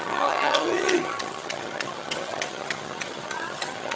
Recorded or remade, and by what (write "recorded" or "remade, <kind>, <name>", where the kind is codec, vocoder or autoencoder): remade, vocoder, HiFi-GAN